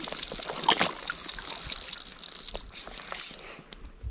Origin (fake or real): real